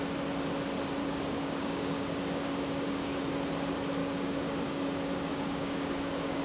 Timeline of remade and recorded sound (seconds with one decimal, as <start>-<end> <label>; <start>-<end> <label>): 0.0-1.0 recorded; 1.0-3.2 remade; 3.2-4.0 recorded; 4.0-6.4 remade